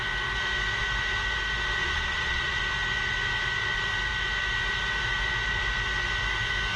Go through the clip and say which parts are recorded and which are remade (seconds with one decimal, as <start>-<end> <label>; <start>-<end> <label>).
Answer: 0.0-1.8 recorded; 1.8-2.6 remade; 2.6-6.8 recorded